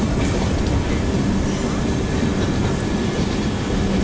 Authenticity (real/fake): real